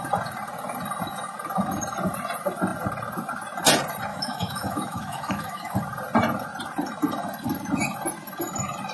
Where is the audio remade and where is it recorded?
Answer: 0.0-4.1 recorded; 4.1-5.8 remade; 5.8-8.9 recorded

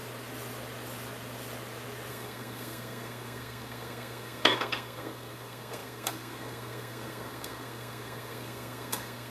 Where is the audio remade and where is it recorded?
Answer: 0.0-2.1 recorded; 2.1-9.3 remade

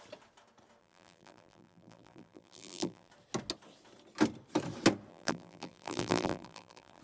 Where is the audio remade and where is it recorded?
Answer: 0.0-0.8 recorded; 0.8-3.1 remade; 3.1-5.1 recorded; 5.1-7.0 remade